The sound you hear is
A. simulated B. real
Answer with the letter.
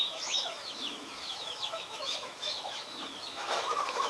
A